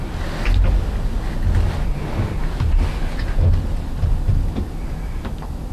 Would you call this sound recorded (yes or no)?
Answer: yes